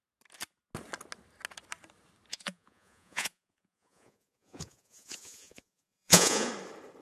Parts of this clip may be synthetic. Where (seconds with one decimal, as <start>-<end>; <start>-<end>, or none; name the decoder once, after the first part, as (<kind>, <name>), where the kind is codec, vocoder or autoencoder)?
2.3-6.5 (vocoder, Vocos)